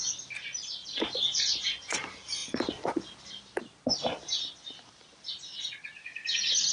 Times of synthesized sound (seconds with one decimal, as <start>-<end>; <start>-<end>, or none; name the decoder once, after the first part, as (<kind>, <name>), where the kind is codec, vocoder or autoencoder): none